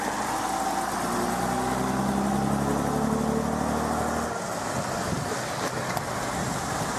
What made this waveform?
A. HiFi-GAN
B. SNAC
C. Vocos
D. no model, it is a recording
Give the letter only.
D